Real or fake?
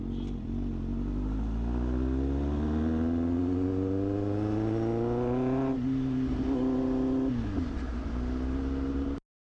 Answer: real